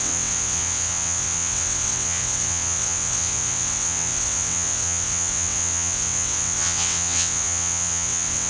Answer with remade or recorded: remade